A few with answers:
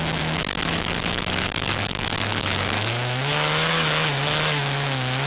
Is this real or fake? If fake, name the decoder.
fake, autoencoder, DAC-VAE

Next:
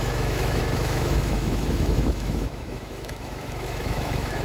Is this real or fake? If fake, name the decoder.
fake, autoencoder, DAC-VAE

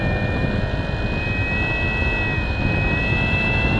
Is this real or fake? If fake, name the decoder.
real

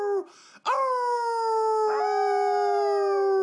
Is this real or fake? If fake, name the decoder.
real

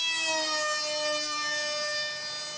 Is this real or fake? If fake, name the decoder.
real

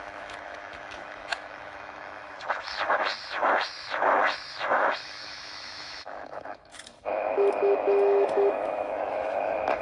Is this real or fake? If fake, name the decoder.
fake, autoencoder, DAC-VAE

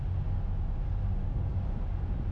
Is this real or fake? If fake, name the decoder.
real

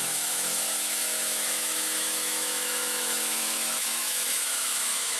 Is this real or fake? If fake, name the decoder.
fake, autoencoder, DAC-VAE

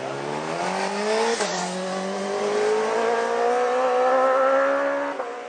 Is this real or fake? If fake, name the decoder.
real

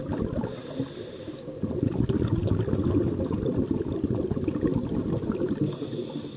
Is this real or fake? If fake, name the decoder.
real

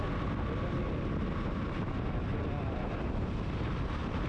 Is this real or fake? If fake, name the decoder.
real